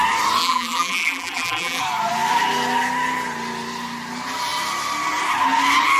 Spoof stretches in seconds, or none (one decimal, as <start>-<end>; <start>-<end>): 0.4-1.8